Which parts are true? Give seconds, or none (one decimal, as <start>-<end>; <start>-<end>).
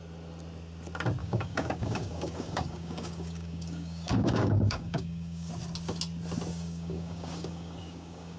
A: 0.0-1.2; 5.5-6.5